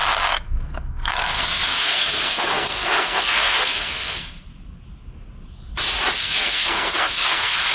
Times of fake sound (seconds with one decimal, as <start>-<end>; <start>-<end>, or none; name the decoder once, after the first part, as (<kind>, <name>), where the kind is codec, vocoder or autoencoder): 0.0-4.5 (codec, SNAC); 6.2-7.7